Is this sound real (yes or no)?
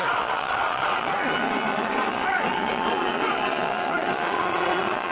no